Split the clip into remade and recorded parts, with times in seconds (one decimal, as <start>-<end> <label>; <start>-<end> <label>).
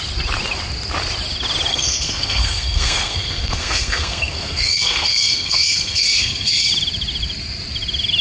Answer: 0.0-1.7 recorded; 1.7-6.6 remade; 6.6-8.2 recorded